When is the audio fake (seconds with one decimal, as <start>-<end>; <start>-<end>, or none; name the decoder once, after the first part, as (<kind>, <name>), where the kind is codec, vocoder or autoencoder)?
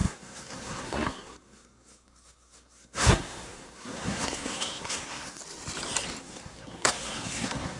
0.0-5.4 (codec, SNAC); 6.2-7.8